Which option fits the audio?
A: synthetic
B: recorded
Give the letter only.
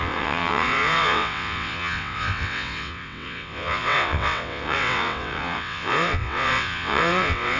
A